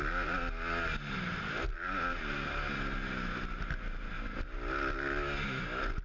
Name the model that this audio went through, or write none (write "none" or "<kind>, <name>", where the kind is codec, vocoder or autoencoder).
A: none